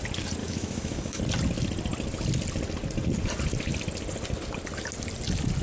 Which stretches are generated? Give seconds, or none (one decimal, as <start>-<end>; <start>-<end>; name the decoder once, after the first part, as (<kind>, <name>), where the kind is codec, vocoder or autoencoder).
0.4-1.2 (autoencoder, DAC-VAE)